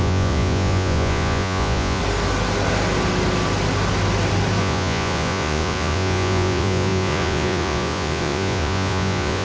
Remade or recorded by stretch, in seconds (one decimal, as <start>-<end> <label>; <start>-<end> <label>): 0.0-2.0 remade; 2.0-4.6 recorded; 4.6-9.4 remade